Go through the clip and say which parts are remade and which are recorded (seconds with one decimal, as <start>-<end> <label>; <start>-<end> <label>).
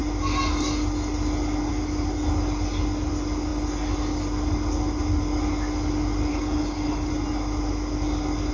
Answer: 0.0-6.3 recorded; 6.3-7.1 remade; 7.1-8.5 recorded